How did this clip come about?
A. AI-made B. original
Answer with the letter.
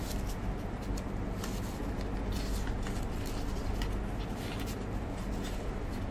B